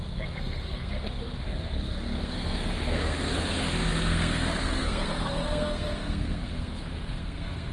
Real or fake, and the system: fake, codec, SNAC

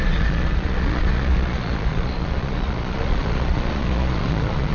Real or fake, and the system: fake, vocoder, Vocos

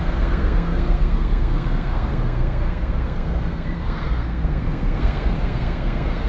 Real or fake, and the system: fake, codec, SNAC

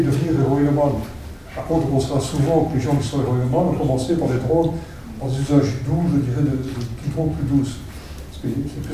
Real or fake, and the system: real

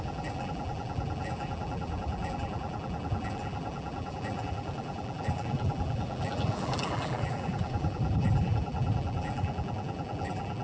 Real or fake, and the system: fake, vocoder, BigVGAN v2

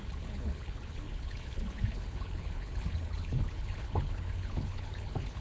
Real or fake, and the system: fake, codec, HILCodec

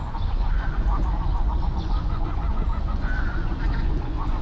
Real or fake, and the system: fake, vocoder, Vocos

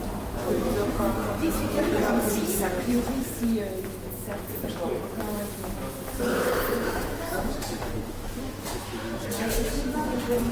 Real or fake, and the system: fake, autoencoder, DAC-VAE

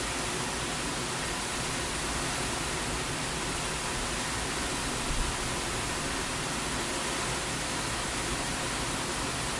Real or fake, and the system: real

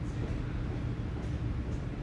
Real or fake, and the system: real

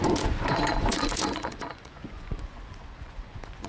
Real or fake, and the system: fake, vocoder, Vocos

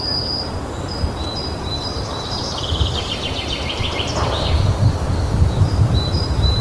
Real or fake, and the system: fake, vocoder, BigVGAN v2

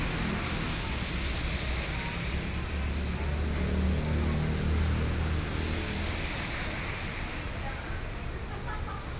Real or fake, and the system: real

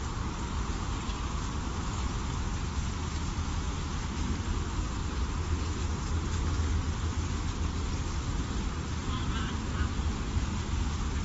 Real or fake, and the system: real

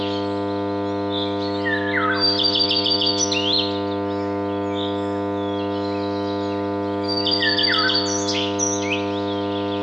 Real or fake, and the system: real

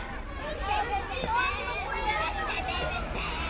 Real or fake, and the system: fake, vocoder, BigVGAN v2